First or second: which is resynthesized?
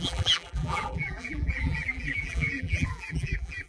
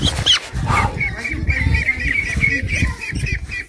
first